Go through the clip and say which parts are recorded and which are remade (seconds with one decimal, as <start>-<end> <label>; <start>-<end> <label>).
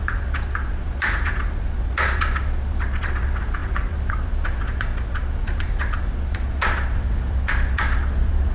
0.0-8.5 remade